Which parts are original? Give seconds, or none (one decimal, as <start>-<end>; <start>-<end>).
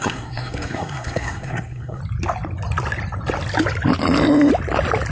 2.0-5.1